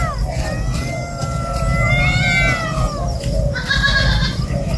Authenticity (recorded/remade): recorded